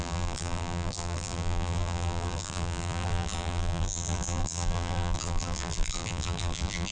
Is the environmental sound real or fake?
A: fake